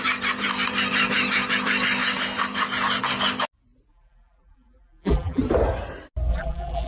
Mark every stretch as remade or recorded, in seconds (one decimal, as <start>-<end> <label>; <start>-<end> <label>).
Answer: 0.0-3.9 recorded; 3.9-5.4 remade; 5.4-6.3 recorded; 6.3-6.9 remade